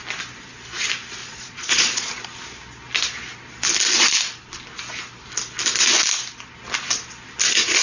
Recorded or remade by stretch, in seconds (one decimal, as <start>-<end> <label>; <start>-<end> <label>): 0.0-1.2 recorded; 1.2-2.1 remade; 2.1-7.8 recorded